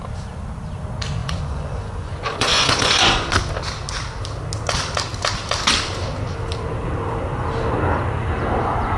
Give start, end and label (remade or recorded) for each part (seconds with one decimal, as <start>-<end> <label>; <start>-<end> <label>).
0.0-1.2 recorded; 1.2-3.3 remade; 3.3-9.0 recorded